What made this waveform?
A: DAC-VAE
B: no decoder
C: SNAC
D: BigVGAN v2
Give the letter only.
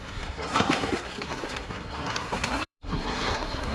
C